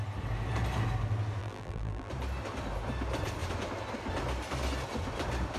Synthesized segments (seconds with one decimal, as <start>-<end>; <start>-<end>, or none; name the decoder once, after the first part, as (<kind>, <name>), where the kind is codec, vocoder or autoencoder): 1.4-2.1 (vocoder, BigVGAN v2)